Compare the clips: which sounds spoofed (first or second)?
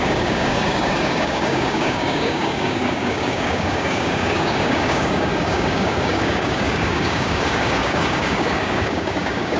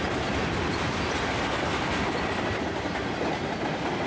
first